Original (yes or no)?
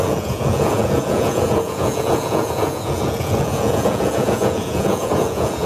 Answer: no